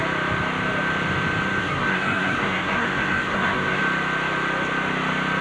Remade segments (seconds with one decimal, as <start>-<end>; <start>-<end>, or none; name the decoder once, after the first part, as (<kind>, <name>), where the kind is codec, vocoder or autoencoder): 1.6-3.8 (codec, SNAC)